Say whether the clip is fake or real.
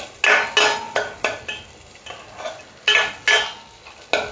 real